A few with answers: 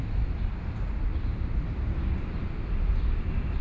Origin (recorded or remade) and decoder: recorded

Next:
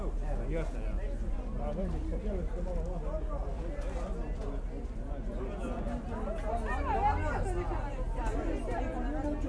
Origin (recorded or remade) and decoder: recorded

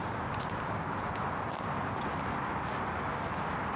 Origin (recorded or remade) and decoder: recorded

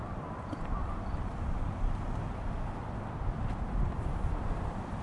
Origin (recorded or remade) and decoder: remade, vocoder, BigVGAN v2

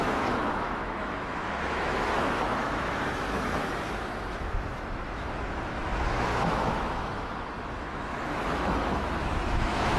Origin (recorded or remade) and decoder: remade, autoencoder, DAC-VAE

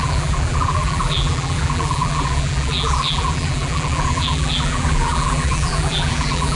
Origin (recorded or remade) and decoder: remade, vocoder, BigVGAN v2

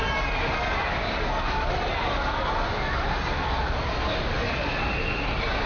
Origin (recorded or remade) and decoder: recorded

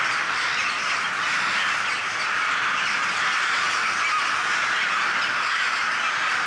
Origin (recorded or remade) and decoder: recorded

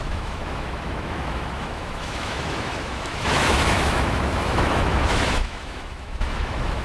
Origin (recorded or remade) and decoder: remade, autoencoder, DAC-VAE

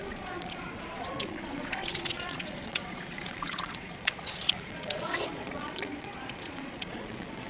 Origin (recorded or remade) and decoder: remade, vocoder, Vocos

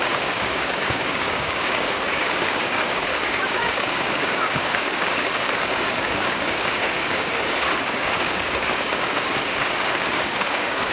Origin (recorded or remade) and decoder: remade, codec, DAC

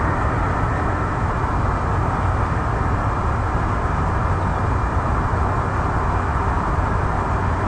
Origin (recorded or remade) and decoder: recorded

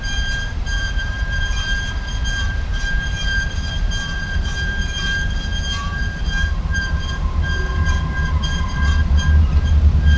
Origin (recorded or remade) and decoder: remade, vocoder, BigVGAN v2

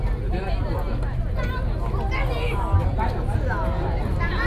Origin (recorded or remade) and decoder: recorded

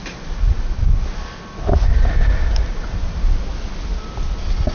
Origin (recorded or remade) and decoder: recorded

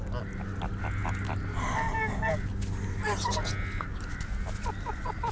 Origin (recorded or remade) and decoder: recorded